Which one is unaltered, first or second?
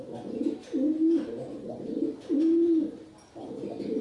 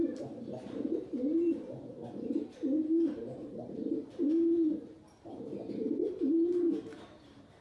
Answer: first